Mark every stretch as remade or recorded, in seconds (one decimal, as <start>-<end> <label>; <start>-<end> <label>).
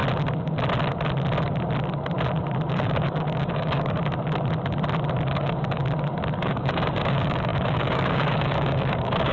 0.0-2.7 recorded; 2.7-4.0 remade; 4.0-5.3 recorded; 5.3-5.8 remade; 5.8-6.4 recorded; 6.4-9.3 remade